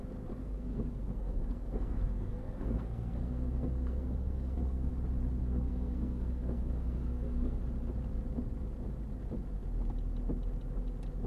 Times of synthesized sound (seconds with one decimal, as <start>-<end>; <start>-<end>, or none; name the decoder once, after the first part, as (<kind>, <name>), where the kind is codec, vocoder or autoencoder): 0.4-4.9 (codec, SNAC); 5.4-7.6